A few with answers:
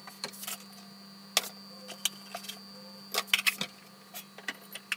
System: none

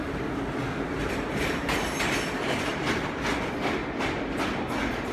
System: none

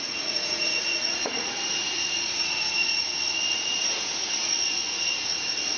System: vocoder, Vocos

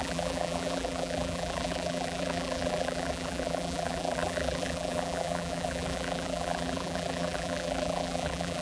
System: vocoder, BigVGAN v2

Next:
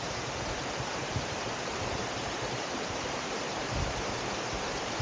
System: vocoder, BigVGAN v2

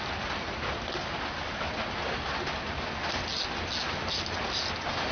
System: none